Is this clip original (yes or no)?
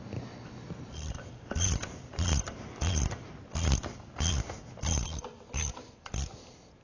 yes